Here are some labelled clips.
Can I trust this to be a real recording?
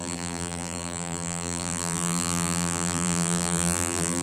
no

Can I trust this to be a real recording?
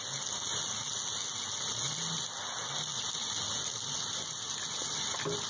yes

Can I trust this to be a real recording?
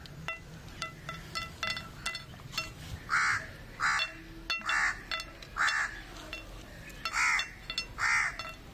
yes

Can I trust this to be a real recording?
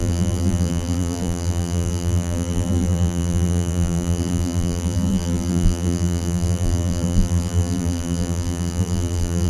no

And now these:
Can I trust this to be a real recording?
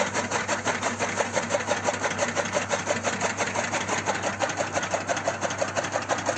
yes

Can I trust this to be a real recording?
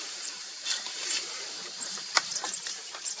no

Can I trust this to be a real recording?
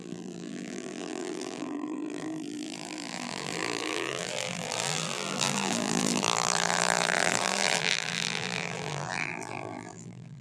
no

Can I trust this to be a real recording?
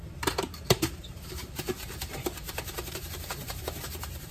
no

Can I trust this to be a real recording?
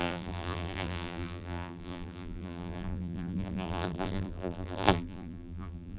no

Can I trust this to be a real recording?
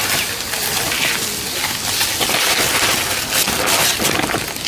yes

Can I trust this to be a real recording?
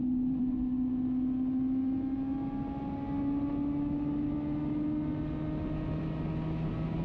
yes